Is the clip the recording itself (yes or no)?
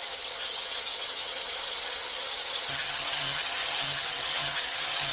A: no